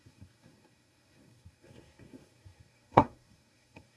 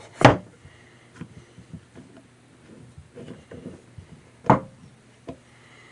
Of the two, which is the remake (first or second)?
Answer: first